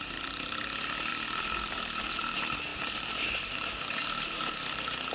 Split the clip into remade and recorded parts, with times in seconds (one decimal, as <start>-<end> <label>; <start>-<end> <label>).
0.0-1.1 recorded; 1.1-2.0 remade; 2.0-2.7 recorded; 2.7-4.5 remade; 4.5-5.1 recorded